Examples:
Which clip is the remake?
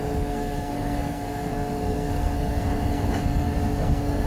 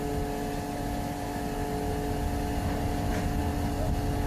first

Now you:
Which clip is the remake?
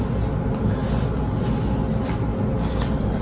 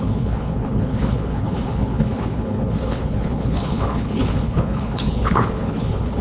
second